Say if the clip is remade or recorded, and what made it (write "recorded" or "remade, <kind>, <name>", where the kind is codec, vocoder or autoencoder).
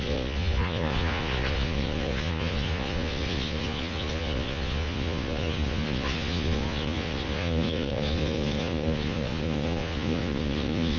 remade, vocoder, Vocos